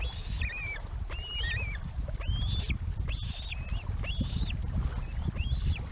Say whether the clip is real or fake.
real